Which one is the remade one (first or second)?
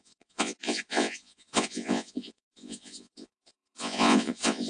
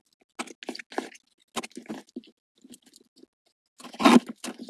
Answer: first